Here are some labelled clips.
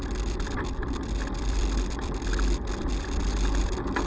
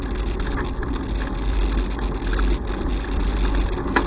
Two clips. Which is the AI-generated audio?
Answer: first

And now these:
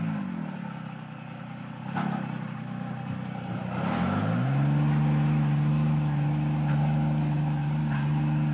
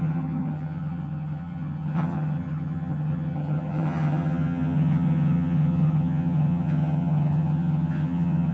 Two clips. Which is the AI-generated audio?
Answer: second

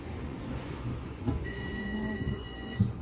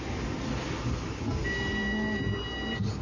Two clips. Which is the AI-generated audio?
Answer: first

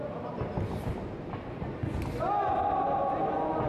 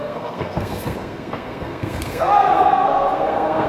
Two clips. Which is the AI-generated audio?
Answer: second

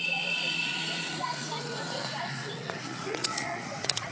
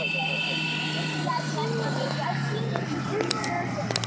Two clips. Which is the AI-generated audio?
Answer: first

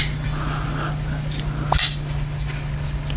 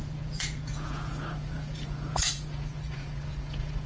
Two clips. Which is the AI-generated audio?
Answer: second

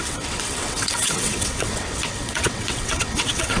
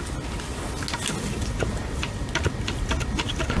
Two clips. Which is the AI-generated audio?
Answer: first